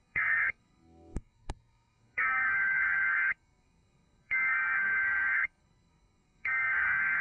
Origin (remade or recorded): remade